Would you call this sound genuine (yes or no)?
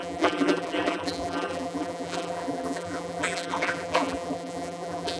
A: no